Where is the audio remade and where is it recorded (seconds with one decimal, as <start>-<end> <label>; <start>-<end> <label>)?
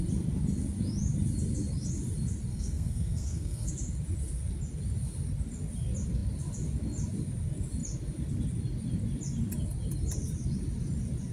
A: 0.0-2.5 recorded; 2.5-3.7 remade; 3.7-11.3 recorded